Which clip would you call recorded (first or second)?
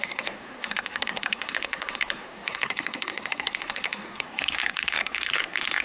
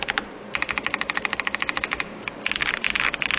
second